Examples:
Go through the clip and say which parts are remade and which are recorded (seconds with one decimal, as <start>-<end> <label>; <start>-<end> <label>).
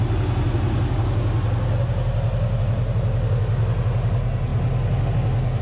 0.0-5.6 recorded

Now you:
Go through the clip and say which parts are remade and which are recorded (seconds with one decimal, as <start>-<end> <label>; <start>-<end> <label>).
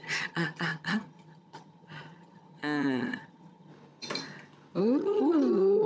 0.0-3.7 remade; 3.7-4.8 recorded; 4.8-5.9 remade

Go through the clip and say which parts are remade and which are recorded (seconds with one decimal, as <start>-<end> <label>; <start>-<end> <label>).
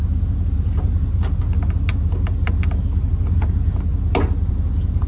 0.0-5.1 recorded